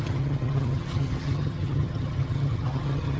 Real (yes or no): no